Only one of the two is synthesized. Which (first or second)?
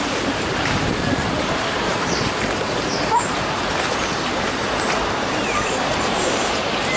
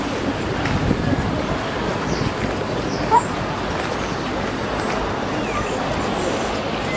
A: first